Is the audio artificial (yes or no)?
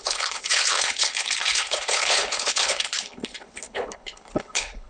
yes